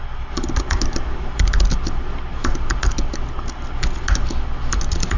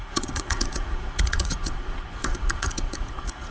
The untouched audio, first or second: first